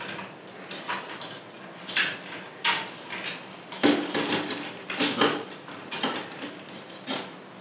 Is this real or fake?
real